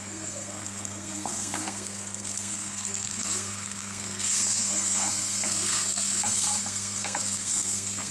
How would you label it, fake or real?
fake